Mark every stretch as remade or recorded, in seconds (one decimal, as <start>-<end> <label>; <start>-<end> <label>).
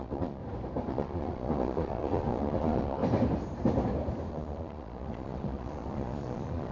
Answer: 0.0-0.4 remade; 0.4-0.9 recorded; 0.9-3.0 remade; 3.0-4.3 recorded; 4.3-6.7 remade